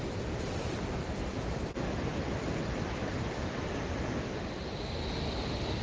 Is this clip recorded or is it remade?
remade